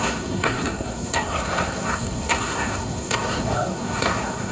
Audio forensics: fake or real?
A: fake